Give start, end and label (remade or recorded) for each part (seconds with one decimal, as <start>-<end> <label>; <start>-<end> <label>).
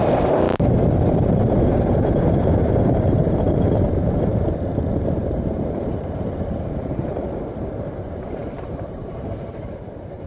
0.0-10.3 remade